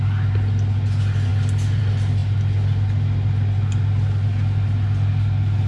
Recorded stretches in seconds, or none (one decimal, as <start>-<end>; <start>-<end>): 0.0-5.7